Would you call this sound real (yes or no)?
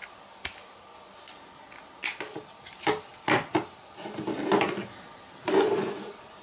yes